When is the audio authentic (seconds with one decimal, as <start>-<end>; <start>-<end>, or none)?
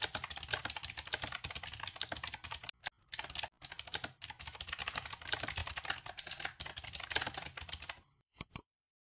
0.0-9.1